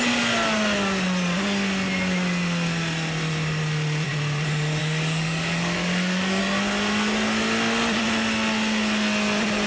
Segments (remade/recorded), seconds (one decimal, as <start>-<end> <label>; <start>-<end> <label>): 0.0-4.8 recorded; 4.8-6.4 remade; 6.4-9.7 recorded